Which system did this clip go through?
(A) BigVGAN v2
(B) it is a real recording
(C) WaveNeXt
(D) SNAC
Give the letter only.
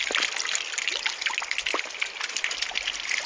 B